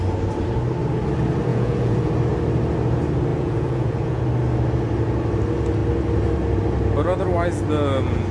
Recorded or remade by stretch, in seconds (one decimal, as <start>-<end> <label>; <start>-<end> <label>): 0.0-1.5 recorded; 1.5-2.1 remade; 2.1-3.3 recorded; 3.3-4.2 remade; 4.2-8.3 recorded